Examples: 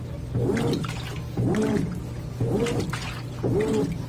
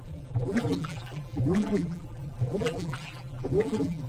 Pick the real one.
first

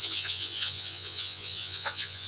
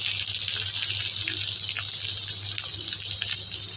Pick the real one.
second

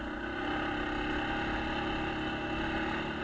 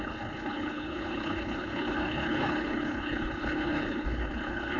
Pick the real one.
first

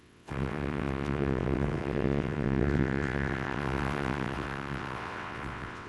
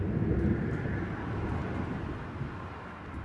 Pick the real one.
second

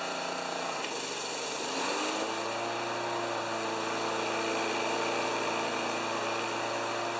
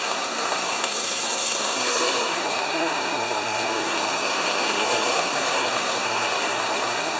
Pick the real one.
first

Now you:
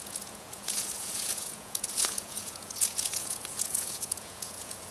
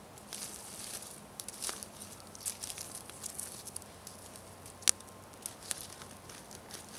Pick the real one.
second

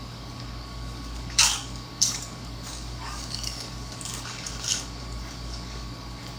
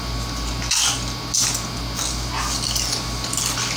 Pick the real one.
second